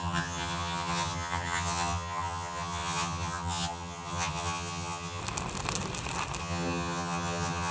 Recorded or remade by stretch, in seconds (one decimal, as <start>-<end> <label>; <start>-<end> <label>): 0.0-5.2 remade; 5.2-6.4 recorded; 6.4-7.7 remade